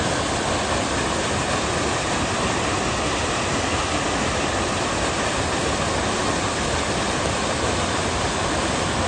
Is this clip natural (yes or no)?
yes